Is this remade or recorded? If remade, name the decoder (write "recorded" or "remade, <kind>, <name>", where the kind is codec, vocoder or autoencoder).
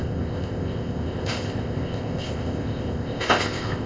remade, codec, ZipCodec